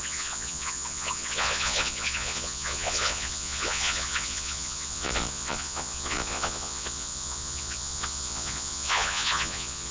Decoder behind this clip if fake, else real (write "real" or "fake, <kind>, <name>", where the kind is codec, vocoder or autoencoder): fake, vocoder, Vocos